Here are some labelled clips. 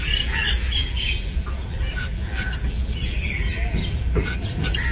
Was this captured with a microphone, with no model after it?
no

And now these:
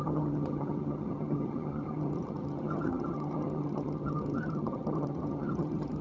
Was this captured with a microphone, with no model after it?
no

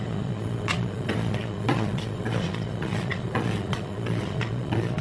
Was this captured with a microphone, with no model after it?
no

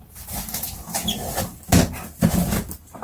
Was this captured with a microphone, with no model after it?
yes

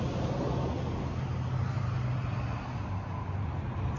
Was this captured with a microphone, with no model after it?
yes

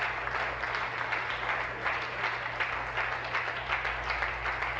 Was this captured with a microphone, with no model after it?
yes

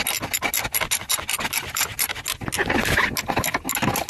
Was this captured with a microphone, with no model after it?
yes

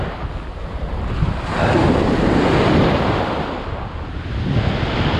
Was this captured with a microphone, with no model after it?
yes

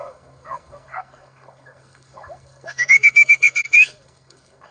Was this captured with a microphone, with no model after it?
no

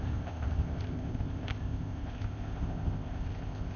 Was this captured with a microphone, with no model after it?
no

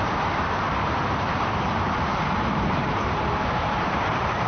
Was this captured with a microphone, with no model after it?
no